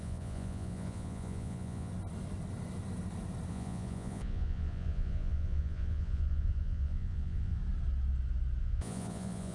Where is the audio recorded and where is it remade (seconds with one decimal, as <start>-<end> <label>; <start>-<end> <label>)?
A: 0.0-1.9 remade; 1.9-3.5 recorded; 3.5-7.6 remade; 7.6-8.6 recorded; 8.6-9.5 remade